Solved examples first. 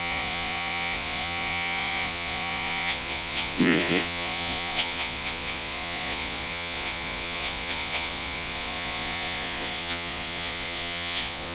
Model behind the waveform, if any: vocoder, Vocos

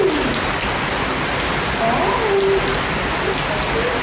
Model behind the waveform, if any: none